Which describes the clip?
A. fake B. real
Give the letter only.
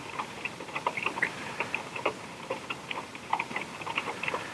A